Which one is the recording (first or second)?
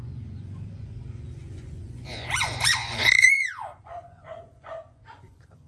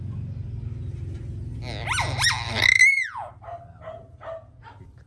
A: second